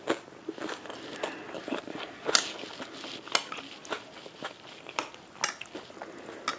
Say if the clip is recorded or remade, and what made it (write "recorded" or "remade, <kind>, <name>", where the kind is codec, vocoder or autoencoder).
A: recorded